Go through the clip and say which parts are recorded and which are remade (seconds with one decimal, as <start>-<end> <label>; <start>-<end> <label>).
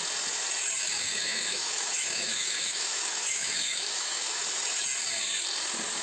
0.0-0.8 recorded; 0.8-4.4 remade; 4.4-6.0 recorded